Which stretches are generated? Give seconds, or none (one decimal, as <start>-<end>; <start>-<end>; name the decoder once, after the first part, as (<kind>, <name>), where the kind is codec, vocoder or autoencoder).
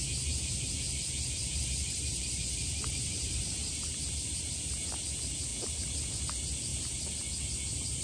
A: 1.4-4.4 (vocoder, BigVGAN v2); 6.7-7.2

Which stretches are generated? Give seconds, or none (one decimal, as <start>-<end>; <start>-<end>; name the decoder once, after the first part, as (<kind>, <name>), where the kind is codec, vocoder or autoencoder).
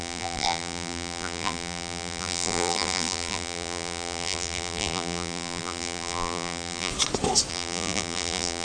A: 0.0-6.9 (vocoder, BigVGAN v2); 7.5-8.6